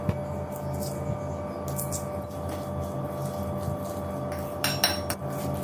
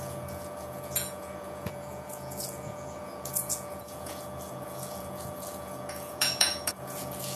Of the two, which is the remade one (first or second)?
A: second